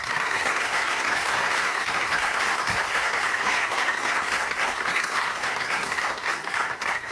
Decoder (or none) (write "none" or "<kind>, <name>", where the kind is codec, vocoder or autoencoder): codec, SNAC